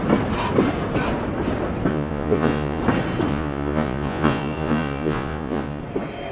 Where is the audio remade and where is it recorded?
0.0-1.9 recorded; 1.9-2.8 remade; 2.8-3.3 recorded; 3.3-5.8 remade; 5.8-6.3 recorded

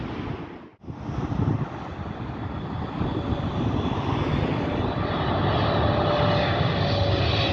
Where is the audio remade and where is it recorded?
0.0-7.5 recorded